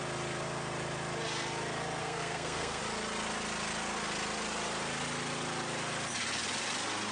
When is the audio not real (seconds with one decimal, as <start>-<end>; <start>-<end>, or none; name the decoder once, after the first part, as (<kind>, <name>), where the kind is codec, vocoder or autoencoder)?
2.0-2.8 (codec, SNAC)